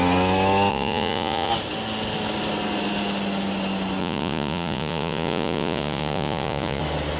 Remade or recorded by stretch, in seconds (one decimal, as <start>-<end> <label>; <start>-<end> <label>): 0.0-0.7 recorded; 0.7-1.5 remade; 1.5-4.0 recorded; 4.0-6.8 remade; 6.8-7.2 recorded